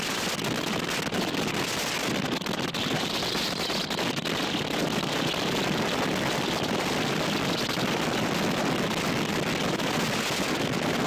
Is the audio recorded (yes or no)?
yes